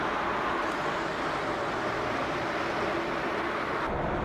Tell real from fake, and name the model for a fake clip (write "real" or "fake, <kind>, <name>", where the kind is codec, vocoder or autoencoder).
real